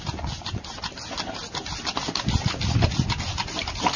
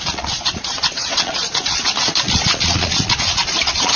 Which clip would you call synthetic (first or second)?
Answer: second